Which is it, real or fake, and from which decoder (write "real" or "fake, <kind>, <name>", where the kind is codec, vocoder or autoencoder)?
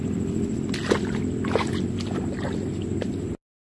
real